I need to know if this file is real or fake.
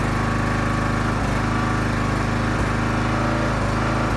real